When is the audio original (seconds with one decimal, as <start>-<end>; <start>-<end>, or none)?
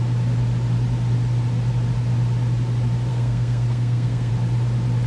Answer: 0.0-3.1; 4.3-5.1